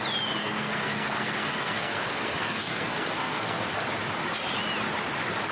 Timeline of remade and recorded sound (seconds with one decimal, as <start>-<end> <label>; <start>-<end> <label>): 0.0-0.4 recorded; 0.4-3.7 remade; 3.7-5.5 recorded